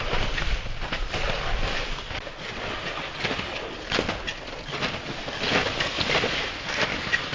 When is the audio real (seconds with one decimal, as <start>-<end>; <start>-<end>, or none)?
0.0-7.3